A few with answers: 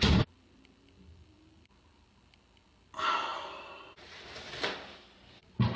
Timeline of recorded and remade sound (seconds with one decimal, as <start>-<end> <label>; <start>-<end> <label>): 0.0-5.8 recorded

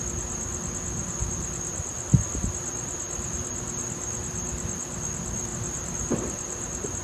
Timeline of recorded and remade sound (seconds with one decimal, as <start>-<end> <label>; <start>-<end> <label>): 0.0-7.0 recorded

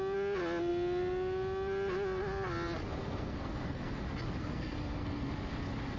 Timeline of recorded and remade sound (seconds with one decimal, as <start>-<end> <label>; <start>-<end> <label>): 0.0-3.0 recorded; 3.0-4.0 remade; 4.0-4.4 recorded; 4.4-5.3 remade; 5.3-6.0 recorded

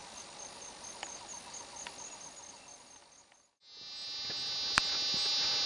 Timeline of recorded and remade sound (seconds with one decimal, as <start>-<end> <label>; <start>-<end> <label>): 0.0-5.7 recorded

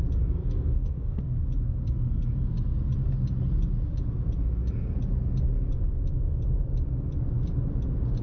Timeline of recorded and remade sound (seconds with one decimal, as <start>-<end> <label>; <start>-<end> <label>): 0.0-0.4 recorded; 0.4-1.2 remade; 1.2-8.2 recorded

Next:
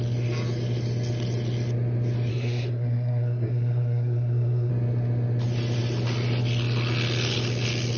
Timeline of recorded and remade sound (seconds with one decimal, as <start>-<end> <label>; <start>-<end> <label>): 0.0-2.3 recorded; 2.3-4.7 remade; 4.7-8.0 recorded

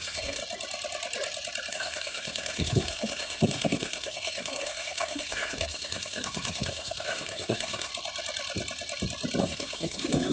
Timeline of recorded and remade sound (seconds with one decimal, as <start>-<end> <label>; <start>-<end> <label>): 0.0-0.4 remade; 0.4-1.7 recorded; 1.7-7.9 remade; 7.9-9.4 recorded; 9.4-10.3 remade

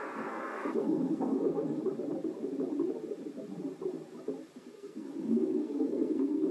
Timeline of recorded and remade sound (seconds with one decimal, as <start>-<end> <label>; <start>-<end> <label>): 0.0-1.8 remade; 1.8-4.6 recorded; 4.6-6.5 remade